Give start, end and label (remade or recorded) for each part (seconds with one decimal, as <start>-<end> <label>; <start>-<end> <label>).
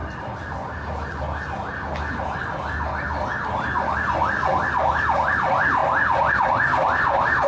0.0-7.5 recorded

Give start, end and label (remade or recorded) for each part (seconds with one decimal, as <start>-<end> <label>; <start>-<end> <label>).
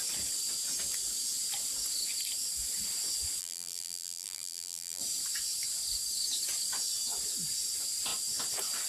0.0-3.4 recorded; 3.4-5.0 remade; 5.0-8.9 recorded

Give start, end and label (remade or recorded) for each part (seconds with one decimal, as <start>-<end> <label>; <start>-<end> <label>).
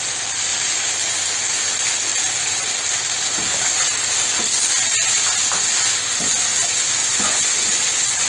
0.0-7.0 recorded; 7.0-8.3 remade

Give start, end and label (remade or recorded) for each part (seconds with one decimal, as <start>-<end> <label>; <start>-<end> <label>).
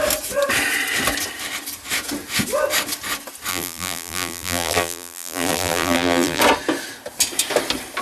0.0-3.5 recorded; 3.5-6.4 remade; 6.4-8.0 recorded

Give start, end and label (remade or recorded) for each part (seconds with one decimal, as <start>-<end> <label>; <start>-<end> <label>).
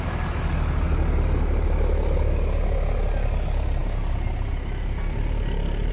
0.0-5.9 recorded